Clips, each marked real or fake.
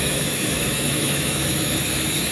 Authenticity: fake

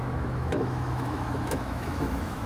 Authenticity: fake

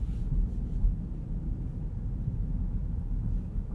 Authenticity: real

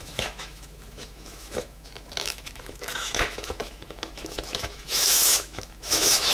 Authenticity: fake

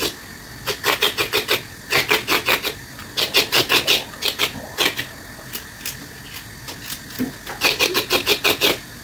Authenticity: real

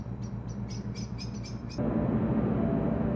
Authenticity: real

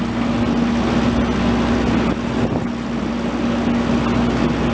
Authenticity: real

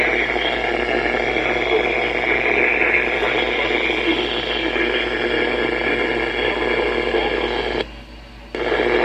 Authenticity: real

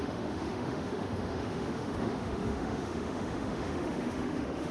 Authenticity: fake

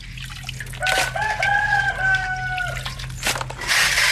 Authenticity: real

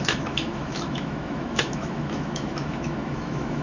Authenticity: fake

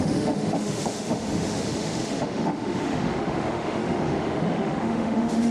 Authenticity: fake